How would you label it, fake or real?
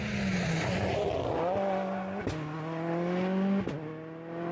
real